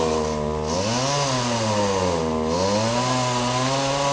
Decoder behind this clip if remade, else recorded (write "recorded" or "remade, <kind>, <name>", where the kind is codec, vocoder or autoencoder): recorded